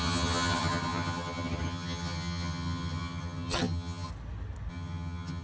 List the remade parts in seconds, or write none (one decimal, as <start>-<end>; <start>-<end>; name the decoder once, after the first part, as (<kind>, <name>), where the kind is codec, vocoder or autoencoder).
0.0-4.1 (vocoder, HiFi-GAN); 4.7-5.4